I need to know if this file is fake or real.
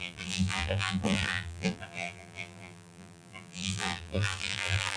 fake